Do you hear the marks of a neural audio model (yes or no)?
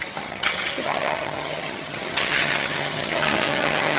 yes